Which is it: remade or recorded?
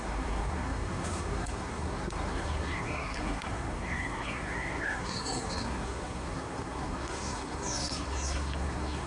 remade